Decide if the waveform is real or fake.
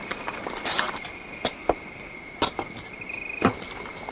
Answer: real